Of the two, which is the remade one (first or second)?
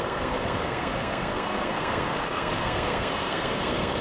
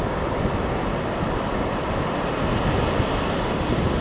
first